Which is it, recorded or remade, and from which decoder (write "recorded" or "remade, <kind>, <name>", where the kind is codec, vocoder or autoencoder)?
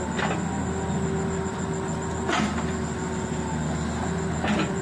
recorded